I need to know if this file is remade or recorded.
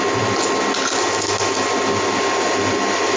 recorded